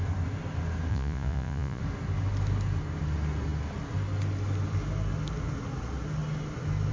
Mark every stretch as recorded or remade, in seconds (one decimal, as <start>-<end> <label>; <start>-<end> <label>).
0.0-0.9 recorded; 0.9-1.8 remade; 1.8-6.9 recorded